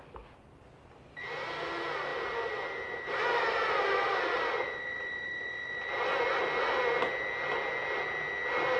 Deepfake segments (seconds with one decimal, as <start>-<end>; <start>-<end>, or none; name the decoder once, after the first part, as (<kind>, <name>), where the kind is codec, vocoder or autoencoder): none